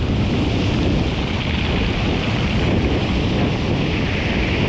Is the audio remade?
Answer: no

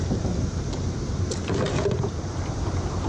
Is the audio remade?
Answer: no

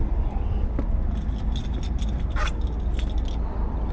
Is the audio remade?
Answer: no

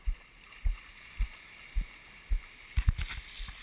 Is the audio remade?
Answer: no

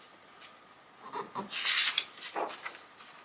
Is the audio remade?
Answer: no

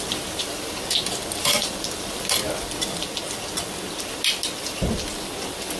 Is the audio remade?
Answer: no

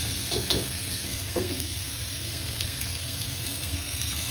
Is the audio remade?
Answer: yes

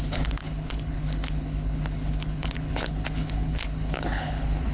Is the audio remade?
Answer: yes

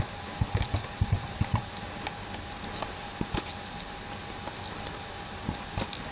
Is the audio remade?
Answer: no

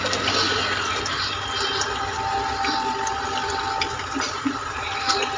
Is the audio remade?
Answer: no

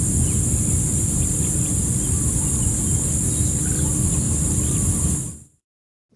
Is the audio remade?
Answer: no